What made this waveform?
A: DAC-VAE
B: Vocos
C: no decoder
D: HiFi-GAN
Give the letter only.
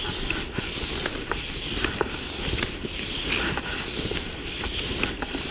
C